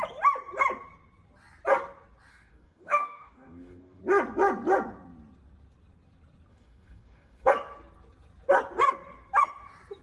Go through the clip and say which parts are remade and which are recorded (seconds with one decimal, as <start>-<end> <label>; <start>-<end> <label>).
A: 0.0-2.3 recorded; 2.3-4.0 remade; 4.0-6.5 recorded; 6.5-7.5 remade; 7.5-10.0 recorded